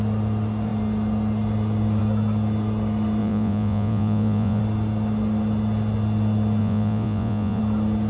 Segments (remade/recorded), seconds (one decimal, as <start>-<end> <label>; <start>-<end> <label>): 0.0-3.2 recorded; 3.2-4.6 remade; 4.6-6.6 recorded; 6.6-7.6 remade; 7.6-8.1 recorded